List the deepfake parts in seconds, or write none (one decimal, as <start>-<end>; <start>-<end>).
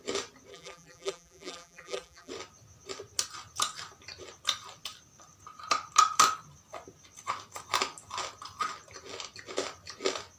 0.5-2.3